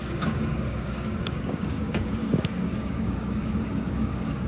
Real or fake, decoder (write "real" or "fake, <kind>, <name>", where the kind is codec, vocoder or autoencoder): fake, codec, DAC